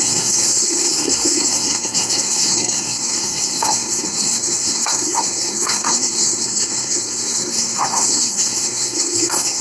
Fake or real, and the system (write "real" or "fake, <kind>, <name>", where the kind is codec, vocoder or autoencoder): fake, codec, SNAC